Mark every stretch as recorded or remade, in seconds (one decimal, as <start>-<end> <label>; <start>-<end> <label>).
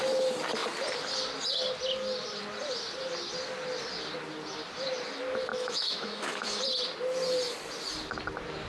0.0-5.5 recorded; 5.5-6.6 remade; 6.6-8.7 recorded